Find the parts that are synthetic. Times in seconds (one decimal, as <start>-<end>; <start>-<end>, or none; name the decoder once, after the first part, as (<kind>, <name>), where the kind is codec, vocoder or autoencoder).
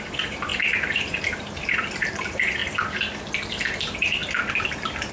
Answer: 0.0-2.6 (vocoder, BigVGAN v2); 3.5-4.2